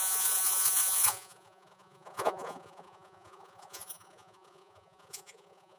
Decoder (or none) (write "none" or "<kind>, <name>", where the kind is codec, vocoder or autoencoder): vocoder, Vocos